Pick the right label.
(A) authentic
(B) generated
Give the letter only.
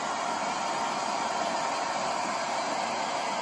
A